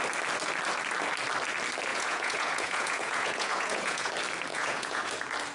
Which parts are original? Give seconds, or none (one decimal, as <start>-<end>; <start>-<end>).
0.0-1.9; 4.1-4.5; 5.1-5.5